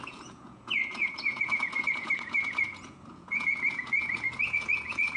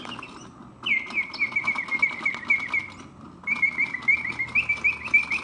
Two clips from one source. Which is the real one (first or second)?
second